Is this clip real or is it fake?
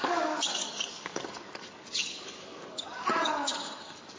fake